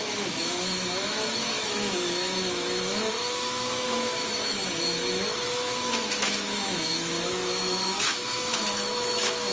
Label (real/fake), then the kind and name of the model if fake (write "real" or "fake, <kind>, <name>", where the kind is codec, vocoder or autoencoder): fake, autoencoder, DAC-VAE